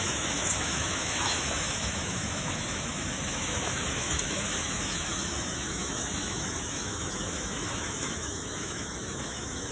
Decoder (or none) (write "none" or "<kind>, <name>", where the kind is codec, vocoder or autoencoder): autoencoder, DAC-VAE